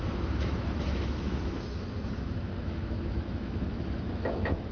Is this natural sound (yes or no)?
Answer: no